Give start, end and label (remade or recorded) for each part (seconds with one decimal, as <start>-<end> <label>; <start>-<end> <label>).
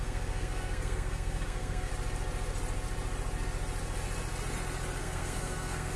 0.0-1.9 remade; 1.9-5.0 recorded; 5.0-6.0 remade